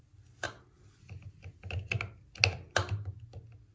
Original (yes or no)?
yes